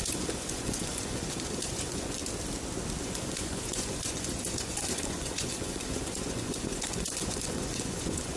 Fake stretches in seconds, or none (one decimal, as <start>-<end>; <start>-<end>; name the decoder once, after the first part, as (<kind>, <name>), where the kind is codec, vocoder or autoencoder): 0.0-2.2 (vocoder, Vocos); 3.0-8.4

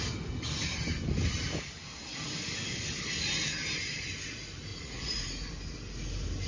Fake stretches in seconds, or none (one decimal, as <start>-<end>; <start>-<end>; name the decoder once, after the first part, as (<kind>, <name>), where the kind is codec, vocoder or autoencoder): 4.7-5.5 (vocoder, Vocos)

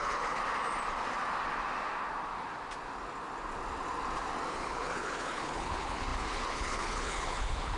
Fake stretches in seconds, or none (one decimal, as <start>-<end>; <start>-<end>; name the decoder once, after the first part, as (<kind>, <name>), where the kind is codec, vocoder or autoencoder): 0.0-0.4 (codec, HILCodec); 4.5-7.8

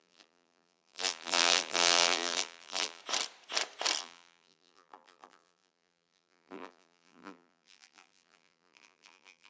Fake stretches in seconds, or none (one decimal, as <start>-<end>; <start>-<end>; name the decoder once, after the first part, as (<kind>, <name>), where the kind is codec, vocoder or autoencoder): 0.0-3.0 (vocoder, BigVGAN v2); 4.0-9.5

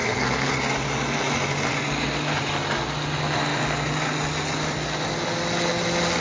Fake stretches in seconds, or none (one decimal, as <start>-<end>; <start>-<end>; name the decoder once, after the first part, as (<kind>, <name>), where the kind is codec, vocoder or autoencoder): 0.0-0.5 (codec, SNAC)

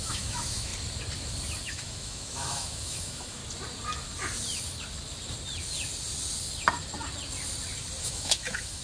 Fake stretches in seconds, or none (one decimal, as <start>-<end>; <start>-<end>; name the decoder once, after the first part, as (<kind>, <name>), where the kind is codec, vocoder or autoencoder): 0.0-0.7 (autoencoder, DAC-VAE); 1.6-3.4; 8.0-8.8

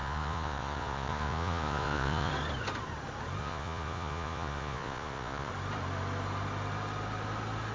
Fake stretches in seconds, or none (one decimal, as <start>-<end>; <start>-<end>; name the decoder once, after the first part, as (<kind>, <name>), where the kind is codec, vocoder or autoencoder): 0.0-2.3 (vocoder, Vocos); 3.4-5.5

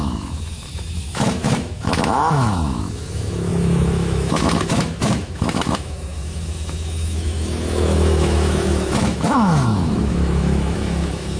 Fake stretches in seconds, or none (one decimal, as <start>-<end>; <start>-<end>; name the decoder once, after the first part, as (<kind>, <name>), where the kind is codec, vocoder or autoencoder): 0.0-11.4 (autoencoder, DAC-VAE)